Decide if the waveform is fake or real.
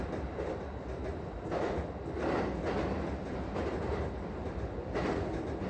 real